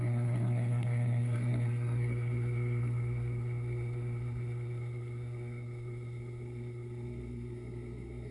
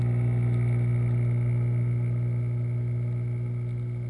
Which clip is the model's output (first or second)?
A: first